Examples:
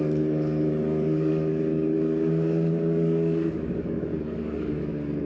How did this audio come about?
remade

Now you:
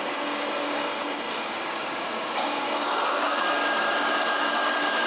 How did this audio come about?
remade